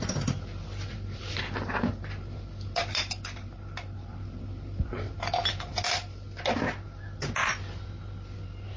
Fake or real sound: real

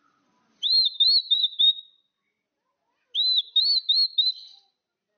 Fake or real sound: real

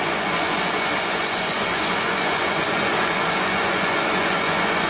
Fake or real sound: fake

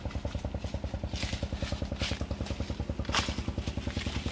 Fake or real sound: real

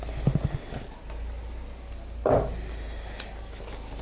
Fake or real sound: real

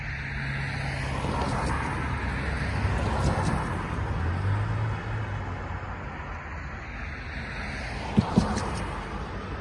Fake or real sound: real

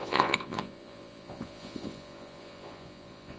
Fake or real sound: fake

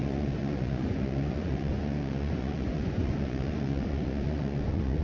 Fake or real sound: fake